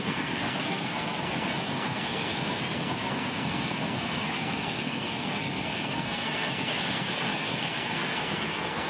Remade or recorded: remade